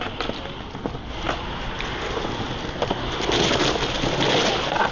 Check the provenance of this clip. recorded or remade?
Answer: recorded